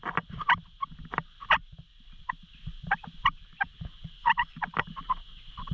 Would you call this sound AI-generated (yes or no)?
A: no